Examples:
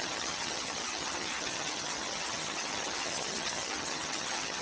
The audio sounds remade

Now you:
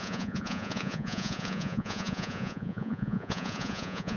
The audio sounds remade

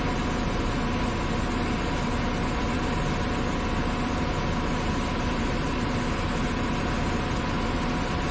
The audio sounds recorded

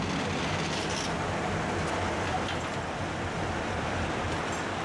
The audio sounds recorded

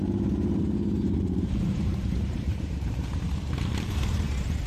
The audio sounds remade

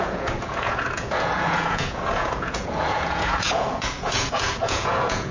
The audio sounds remade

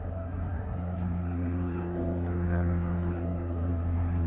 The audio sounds remade